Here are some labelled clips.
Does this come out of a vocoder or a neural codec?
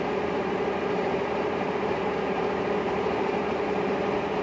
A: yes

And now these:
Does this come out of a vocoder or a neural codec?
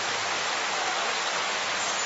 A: no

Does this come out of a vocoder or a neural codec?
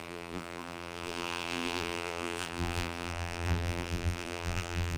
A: yes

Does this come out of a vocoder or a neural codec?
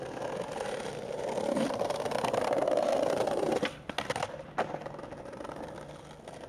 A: no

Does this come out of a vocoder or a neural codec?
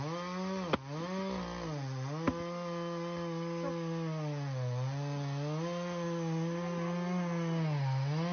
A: no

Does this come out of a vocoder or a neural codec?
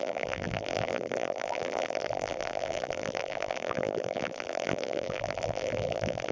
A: yes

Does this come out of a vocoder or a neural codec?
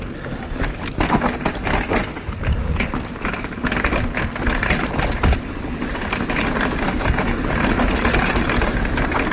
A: no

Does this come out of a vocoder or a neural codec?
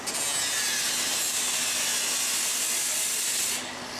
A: no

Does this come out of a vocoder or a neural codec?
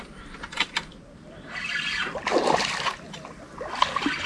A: no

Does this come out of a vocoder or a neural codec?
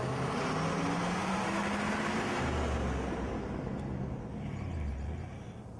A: no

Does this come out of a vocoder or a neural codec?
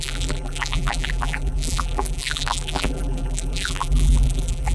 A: yes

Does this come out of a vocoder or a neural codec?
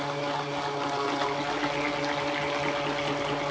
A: no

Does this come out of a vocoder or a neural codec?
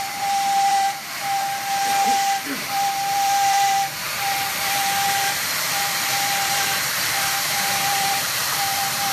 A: yes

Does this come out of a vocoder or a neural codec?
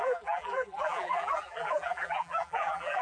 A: yes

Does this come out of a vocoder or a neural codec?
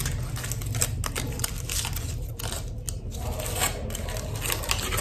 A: no